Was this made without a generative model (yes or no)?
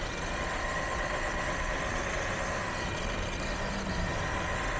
yes